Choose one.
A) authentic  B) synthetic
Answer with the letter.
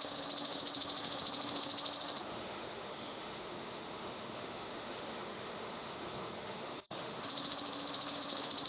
B